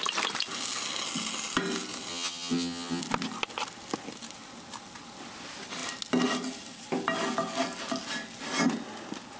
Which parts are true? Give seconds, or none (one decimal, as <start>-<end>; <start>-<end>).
0.0-2.1; 3.0-9.4